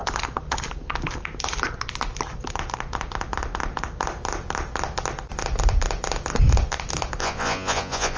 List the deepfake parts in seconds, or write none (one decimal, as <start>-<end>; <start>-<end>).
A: 7.2-8.2